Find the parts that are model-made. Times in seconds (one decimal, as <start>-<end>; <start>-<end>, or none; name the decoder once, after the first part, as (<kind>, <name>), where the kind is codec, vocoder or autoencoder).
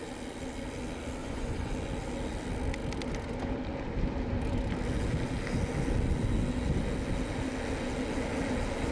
1.2-1.7 (vocoder, Vocos)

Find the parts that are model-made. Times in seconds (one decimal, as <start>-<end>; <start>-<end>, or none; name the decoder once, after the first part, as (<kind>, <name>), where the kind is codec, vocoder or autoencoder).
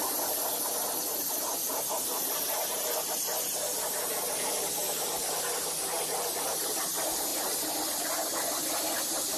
none